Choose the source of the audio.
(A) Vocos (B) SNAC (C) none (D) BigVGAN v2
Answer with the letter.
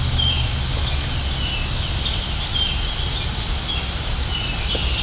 C